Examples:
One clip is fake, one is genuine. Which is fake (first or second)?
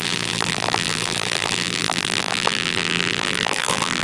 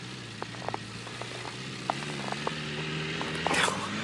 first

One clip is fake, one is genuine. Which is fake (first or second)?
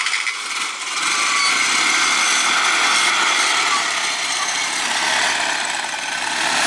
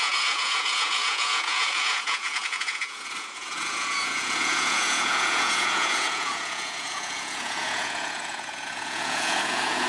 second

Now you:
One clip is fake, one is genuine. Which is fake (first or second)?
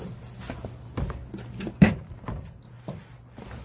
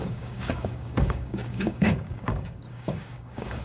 second